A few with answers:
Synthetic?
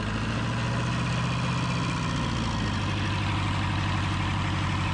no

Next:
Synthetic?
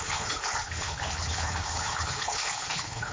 yes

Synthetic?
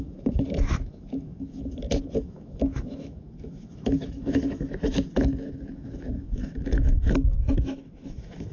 yes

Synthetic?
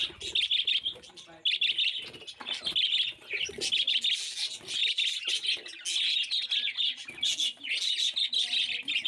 no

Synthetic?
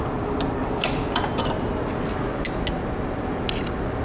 no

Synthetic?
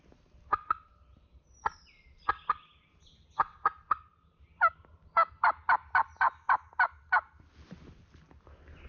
no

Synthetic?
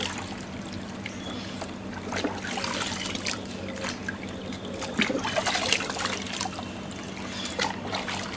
no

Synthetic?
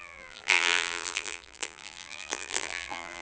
yes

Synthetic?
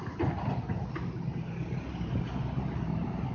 no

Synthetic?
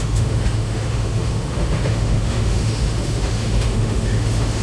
yes